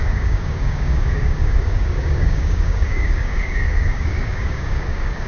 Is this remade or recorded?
remade